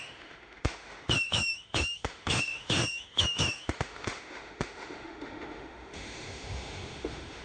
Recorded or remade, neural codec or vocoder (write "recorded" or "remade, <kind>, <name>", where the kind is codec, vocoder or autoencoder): remade, autoencoder, DAC-VAE